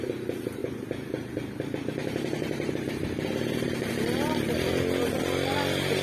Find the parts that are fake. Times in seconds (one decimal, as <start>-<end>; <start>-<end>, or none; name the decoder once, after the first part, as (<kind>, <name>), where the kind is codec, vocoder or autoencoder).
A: 0.6-3.9 (vocoder, BigVGAN v2)